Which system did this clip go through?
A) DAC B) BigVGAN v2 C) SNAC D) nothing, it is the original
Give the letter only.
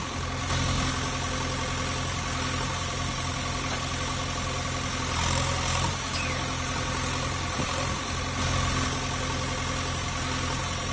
D